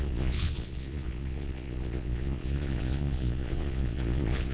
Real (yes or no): no